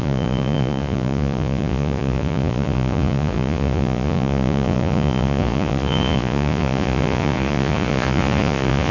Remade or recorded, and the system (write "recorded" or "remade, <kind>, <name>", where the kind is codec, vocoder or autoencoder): remade, vocoder, Vocos